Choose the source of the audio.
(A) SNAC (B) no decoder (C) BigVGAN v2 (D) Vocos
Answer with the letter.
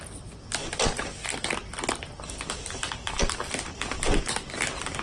B